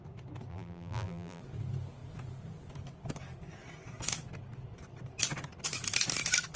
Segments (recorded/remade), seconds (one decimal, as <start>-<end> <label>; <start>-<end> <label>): 0.0-0.5 recorded; 0.5-1.4 remade; 1.4-6.6 recorded